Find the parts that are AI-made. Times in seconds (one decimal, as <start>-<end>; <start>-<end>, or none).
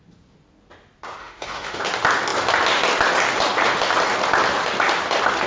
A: 1.2-1.8